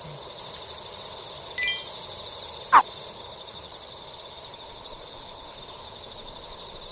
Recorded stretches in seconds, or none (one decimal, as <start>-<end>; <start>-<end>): 0.0-3.7; 5.5-6.9